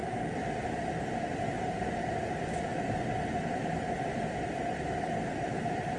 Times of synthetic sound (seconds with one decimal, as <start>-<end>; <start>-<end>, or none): none